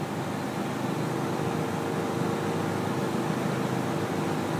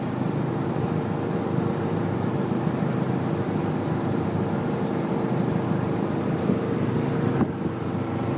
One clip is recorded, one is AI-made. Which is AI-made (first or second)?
second